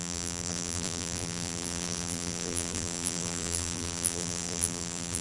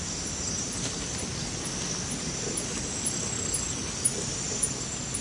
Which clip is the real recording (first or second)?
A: second